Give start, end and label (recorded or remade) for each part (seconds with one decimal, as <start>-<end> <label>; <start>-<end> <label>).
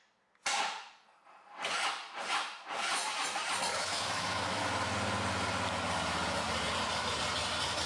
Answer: 0.0-3.7 recorded; 3.7-4.6 remade; 4.6-7.9 recorded